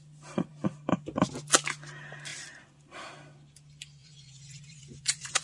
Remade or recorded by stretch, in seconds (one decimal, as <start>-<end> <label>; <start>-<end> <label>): 0.0-4.0 recorded; 4.0-5.4 remade